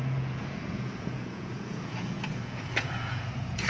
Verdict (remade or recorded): remade